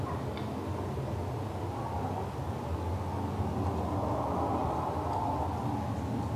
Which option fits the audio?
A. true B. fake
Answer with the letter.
A